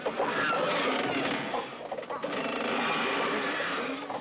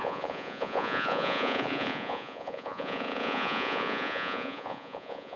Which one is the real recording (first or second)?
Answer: first